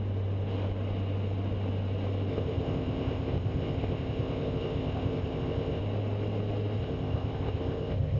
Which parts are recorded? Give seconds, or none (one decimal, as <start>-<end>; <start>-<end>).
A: 0.0-2.3; 5.8-6.8